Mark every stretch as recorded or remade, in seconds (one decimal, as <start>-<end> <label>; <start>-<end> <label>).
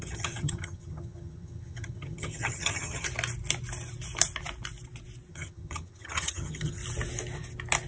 0.0-3.1 remade; 3.1-5.3 recorded; 5.3-6.8 remade; 6.8-7.9 recorded